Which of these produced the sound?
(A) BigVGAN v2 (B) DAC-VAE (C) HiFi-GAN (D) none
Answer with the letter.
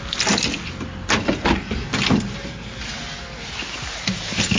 D